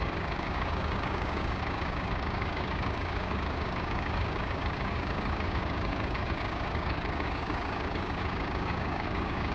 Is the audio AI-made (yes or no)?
yes